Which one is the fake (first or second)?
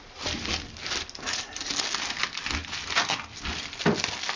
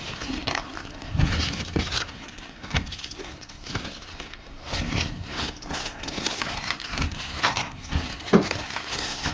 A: second